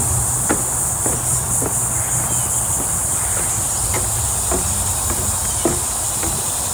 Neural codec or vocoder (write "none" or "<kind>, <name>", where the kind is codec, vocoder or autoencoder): none